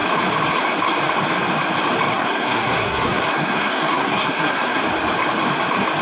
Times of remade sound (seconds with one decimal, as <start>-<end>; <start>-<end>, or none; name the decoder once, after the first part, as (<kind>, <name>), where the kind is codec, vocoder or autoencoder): 2.1-4.8 (codec, SNAC)